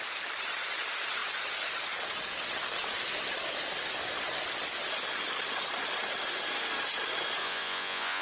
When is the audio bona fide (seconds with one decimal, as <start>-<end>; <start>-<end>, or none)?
0.0-7.4